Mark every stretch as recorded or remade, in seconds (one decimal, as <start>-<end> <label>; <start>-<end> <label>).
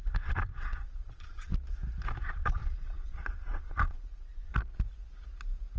0.0-1.5 remade; 1.5-2.2 recorded; 2.2-4.5 remade; 4.5-5.8 recorded